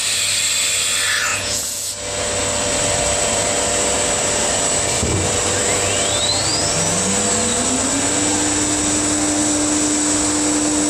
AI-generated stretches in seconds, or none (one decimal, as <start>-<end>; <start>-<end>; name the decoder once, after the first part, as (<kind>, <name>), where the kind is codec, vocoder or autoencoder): 1.3-1.9 (vocoder, Vocos)